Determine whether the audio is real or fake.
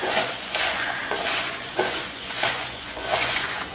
fake